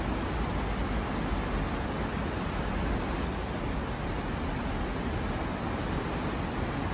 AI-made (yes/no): no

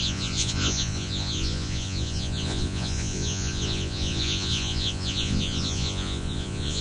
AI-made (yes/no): yes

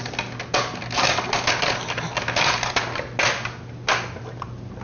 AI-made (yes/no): no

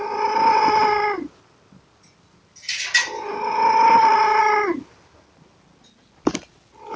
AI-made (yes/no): no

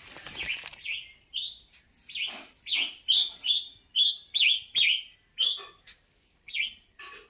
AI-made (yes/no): no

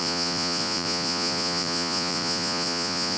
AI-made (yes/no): yes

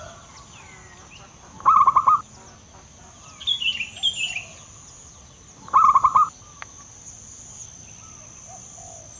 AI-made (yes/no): no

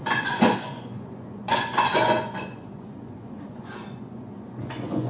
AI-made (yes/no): yes